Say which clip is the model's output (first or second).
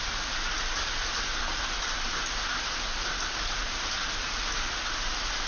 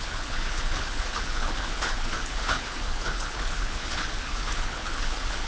second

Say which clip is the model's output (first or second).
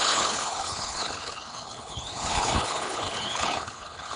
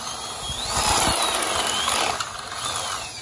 first